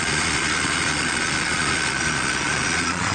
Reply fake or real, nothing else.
fake